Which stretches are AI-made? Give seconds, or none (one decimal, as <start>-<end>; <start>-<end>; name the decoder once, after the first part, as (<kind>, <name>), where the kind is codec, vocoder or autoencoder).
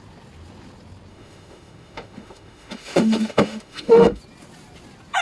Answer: 1.1-4.2 (autoencoder, DAC-VAE)